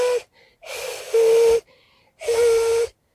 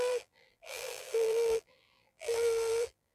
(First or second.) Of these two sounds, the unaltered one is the first